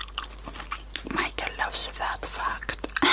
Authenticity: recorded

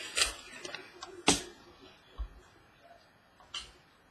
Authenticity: recorded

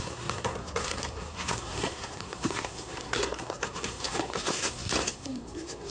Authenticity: remade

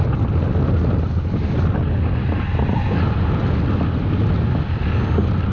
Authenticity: recorded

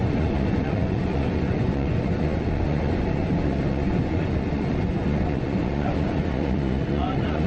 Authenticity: remade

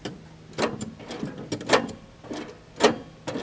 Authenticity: recorded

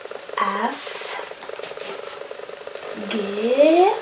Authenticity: recorded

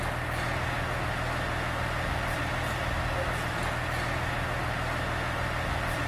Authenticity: recorded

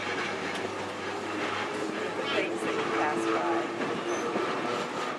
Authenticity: recorded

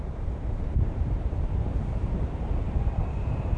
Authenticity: remade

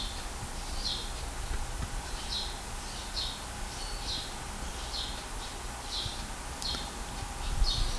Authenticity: recorded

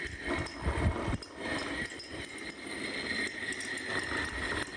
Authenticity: recorded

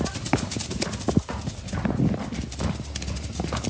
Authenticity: recorded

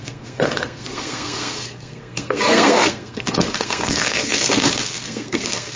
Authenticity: remade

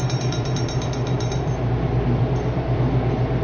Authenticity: remade